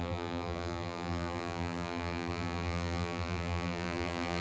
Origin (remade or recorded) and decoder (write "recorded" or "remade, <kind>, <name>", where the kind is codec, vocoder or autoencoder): remade, vocoder, BigVGAN v2